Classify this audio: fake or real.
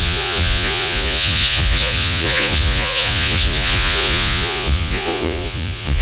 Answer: fake